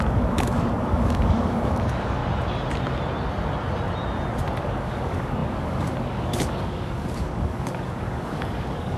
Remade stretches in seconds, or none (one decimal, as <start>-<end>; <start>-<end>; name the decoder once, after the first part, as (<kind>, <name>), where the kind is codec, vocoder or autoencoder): 0.0-2.2 (codec, DAC); 4.6-9.0